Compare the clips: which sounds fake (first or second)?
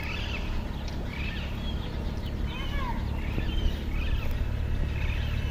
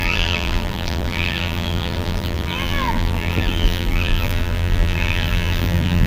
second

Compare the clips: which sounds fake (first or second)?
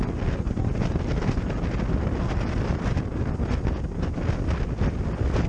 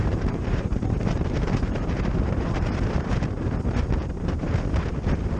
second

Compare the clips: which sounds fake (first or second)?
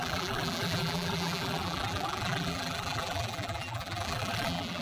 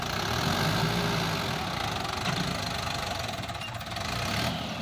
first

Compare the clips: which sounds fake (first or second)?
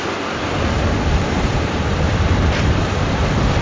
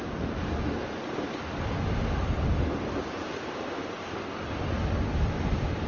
first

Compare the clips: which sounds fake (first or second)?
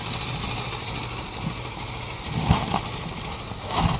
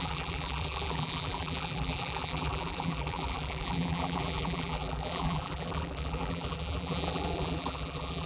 second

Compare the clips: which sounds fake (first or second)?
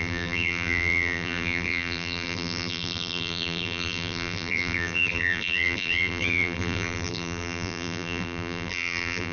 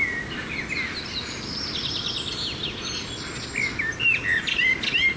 first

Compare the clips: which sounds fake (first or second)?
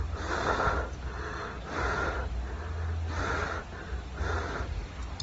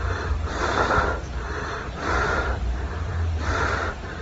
second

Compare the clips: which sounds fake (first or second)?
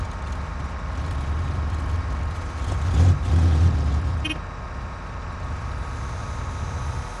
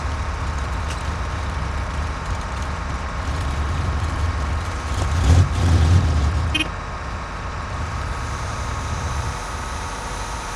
second